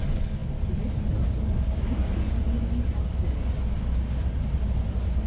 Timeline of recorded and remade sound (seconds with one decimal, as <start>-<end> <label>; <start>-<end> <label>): 0.0-5.3 recorded